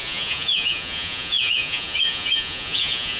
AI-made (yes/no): yes